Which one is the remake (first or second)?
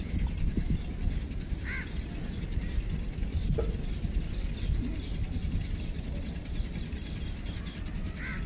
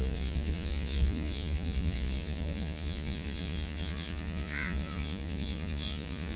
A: second